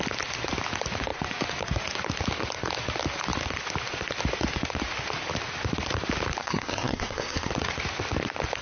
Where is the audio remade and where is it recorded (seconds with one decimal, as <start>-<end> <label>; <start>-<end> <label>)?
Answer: 0.0-6.4 recorded; 6.4-7.5 remade; 7.5-8.6 recorded